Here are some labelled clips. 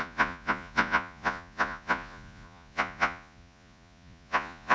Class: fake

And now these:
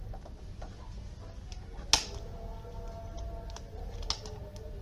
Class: real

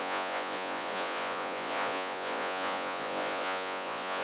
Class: fake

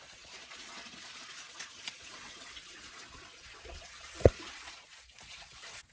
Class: fake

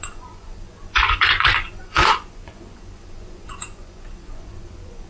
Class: fake